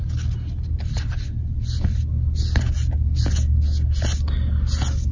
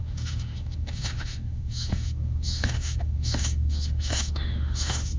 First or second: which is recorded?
first